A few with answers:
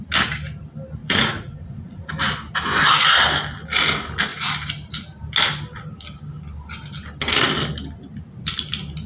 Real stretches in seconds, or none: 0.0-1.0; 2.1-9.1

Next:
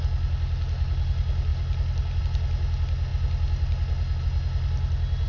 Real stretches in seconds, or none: 0.0-5.3

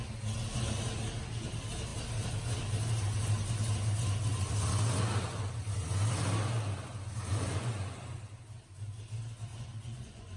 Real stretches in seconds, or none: 0.0-7.3; 8.2-9.5

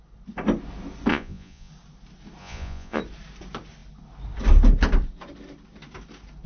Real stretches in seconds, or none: 0.0-1.1; 1.7-2.4; 3.0-6.5

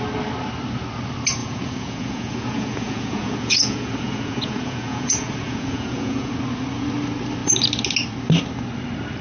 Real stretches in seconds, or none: 0.0-1.4; 6.3-9.2